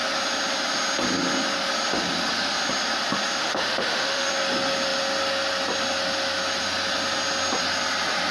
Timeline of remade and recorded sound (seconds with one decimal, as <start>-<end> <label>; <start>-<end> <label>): 0.0-3.4 recorded; 3.4-4.3 remade; 4.3-8.3 recorded